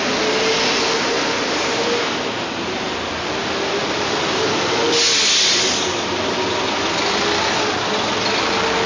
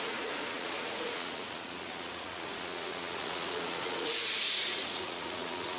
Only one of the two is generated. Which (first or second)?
second